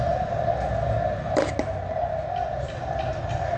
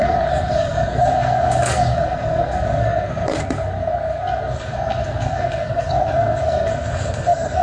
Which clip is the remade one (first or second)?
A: second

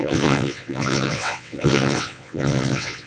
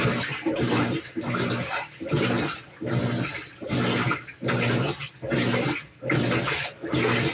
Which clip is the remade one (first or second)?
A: first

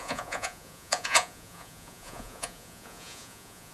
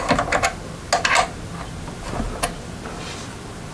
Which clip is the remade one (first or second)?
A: first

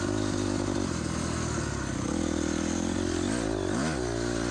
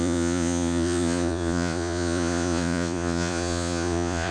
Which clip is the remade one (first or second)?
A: second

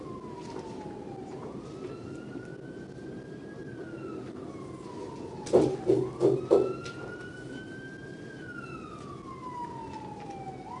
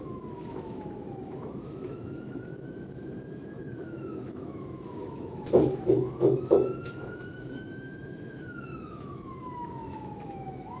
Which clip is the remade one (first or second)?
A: second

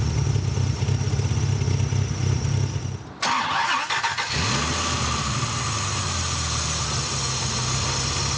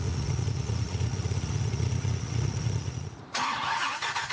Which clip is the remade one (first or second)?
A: second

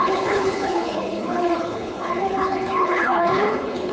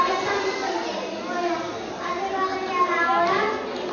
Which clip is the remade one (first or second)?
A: first